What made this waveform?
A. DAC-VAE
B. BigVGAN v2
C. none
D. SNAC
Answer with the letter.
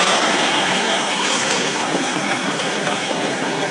D